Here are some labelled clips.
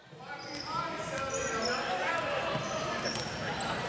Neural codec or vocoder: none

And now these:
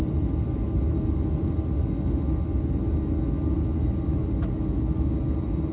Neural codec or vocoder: none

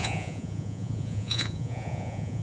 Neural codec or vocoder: vocoder, Vocos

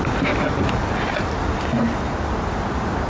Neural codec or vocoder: none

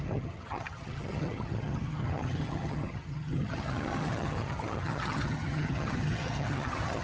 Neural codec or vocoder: vocoder, HiFi-GAN